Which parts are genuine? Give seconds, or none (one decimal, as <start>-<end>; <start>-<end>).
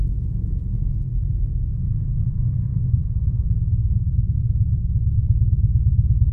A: 0.0-0.7; 2.0-2.7; 4.4-6.3